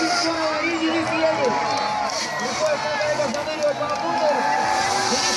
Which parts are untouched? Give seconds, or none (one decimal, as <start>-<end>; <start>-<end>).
0.0-5.4